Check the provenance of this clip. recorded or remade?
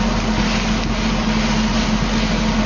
recorded